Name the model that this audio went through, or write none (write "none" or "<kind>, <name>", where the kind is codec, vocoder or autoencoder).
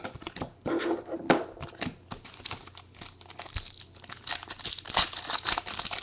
none